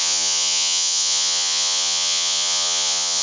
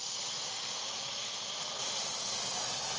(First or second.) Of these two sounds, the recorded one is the second